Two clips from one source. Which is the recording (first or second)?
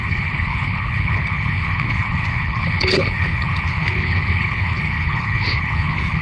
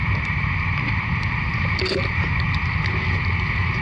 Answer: second